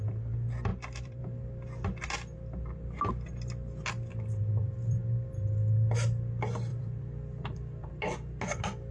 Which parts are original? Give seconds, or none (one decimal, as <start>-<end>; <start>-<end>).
0.0-0.7; 1.2-4.4; 5.0-6.7; 7.9-8.9